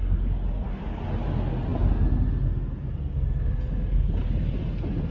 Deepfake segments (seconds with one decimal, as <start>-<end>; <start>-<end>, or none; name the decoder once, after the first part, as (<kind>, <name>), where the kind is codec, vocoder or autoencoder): none